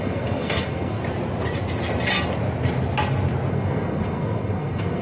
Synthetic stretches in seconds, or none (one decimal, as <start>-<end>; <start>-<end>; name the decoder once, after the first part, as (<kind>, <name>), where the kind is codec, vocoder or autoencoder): 0.0-1.0 (codec, SNAC); 3.5-5.0